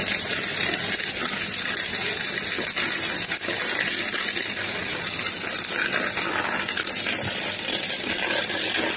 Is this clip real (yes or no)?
yes